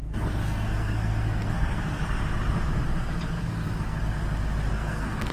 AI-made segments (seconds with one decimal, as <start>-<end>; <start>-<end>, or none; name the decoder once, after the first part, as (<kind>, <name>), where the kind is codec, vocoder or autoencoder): 0.0-2.0 (codec, SNAC); 3.4-4.0; 4.7-5.3